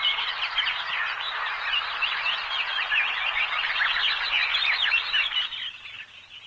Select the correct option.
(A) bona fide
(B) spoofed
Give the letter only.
A